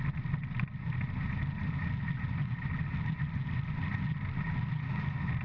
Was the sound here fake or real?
real